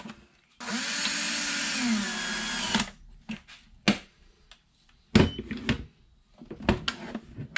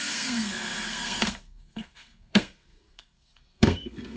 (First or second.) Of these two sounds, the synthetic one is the second